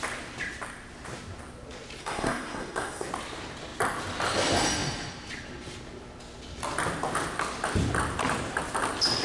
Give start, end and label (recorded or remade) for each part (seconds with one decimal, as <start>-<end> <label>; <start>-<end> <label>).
0.0-2.0 recorded; 2.0-3.1 remade; 3.1-9.2 recorded